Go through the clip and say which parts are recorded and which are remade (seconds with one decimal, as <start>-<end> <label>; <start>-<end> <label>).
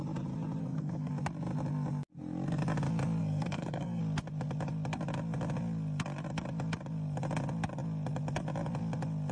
0.0-0.6 recorded; 0.6-1.1 remade; 1.1-3.2 recorded; 3.2-4.0 remade; 4.0-9.3 recorded